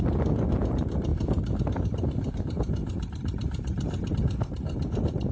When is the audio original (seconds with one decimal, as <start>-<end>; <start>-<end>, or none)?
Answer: 0.0-1.1; 4.1-5.3